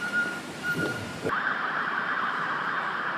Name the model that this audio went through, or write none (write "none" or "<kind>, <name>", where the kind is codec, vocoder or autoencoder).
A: vocoder, BigVGAN v2